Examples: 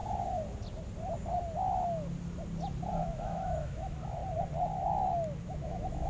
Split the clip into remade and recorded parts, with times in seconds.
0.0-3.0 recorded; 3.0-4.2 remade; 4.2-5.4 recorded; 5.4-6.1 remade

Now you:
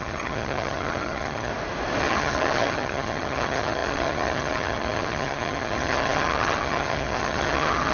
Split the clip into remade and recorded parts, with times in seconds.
0.0-1.5 remade; 1.5-2.0 recorded; 2.0-7.9 remade

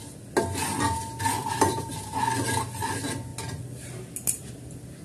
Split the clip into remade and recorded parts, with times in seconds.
0.0-1.4 recorded; 1.4-1.9 remade; 1.9-5.0 recorded

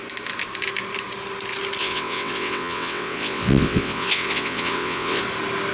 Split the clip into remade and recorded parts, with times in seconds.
0.0-1.8 recorded; 1.8-5.2 remade; 5.2-5.7 recorded

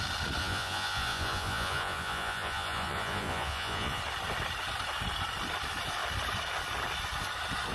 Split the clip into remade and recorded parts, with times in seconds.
0.0-0.4 recorded; 0.4-4.0 remade; 4.0-7.7 recorded

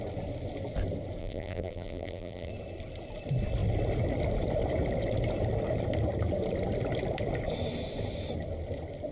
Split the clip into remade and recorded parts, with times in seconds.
0.0-1.2 recorded; 1.2-2.5 remade; 2.5-9.1 recorded

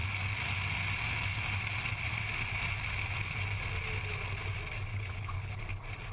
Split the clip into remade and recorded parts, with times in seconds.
0.0-4.9 recorded; 4.9-5.6 remade; 5.6-6.1 recorded